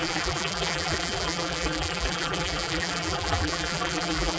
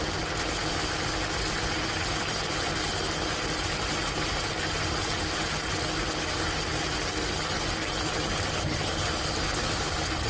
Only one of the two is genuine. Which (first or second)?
second